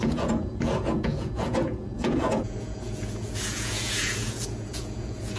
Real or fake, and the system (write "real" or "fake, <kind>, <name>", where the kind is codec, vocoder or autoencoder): fake, vocoder, Vocos